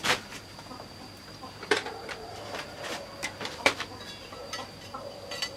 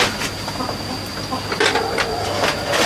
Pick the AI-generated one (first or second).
first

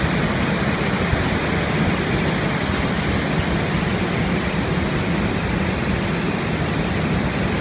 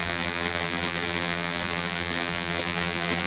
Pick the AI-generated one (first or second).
second